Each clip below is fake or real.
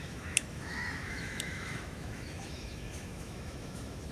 fake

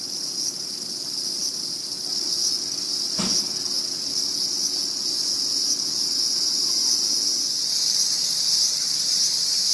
real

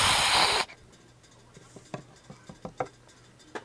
real